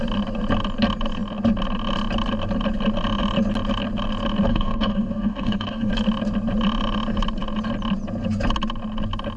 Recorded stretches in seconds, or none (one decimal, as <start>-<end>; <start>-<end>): 0.0-4.5; 5.9-9.4